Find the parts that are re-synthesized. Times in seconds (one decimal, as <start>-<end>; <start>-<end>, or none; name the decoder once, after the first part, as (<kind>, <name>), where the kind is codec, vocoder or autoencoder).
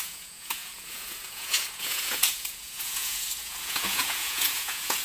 0.0-5.0 (vocoder, Vocos)